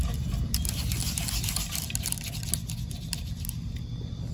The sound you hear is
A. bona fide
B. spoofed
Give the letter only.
A